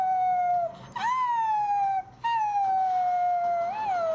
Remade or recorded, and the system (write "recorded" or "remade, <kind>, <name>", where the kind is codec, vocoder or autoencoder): recorded